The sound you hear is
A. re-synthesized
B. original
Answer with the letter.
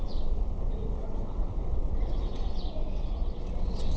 A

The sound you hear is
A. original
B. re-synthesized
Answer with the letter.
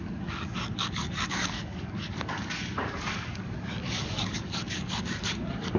B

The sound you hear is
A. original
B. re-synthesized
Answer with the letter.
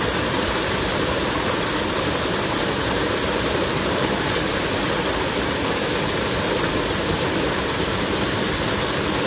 A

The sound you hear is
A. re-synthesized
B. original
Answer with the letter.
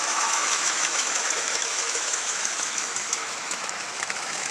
A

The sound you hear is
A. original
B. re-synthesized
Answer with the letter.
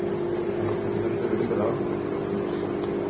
A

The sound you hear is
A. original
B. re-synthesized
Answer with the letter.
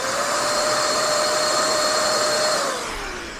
B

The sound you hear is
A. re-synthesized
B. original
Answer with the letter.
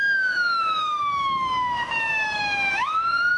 A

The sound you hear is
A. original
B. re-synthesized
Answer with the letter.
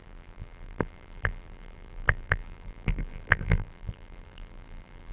B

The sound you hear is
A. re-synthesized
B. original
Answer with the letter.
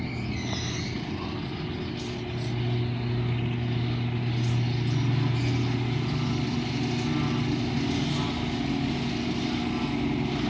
B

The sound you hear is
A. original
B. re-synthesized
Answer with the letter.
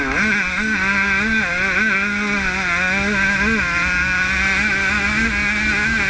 A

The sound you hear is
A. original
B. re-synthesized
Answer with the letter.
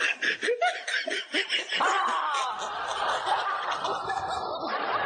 A